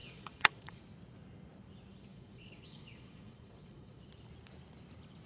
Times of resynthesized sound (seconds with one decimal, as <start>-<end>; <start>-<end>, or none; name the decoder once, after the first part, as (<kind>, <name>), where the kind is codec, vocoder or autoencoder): 0.0-0.8 (vocoder, Vocos); 2.1-4.0